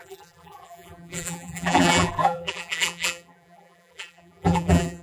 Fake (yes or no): yes